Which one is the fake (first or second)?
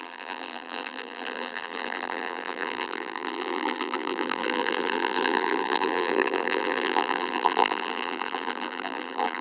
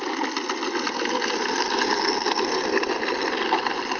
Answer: first